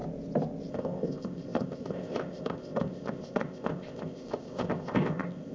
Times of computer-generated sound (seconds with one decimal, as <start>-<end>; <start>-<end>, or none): 0.7-5.5